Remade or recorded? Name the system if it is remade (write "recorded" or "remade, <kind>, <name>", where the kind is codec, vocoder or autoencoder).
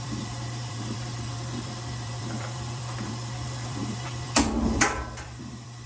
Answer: remade, vocoder, BigVGAN v2